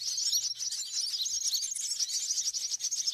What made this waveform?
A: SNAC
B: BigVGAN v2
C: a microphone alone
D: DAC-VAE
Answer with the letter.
C